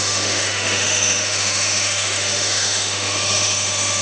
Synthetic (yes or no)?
yes